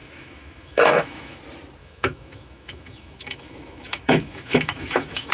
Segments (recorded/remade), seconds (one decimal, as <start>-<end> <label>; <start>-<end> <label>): 0.0-1.4 remade; 1.4-1.8 recorded; 1.8-5.3 remade